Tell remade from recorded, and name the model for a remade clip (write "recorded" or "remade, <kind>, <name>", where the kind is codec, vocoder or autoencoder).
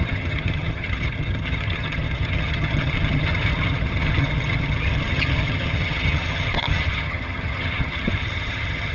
remade, vocoder, HiFi-GAN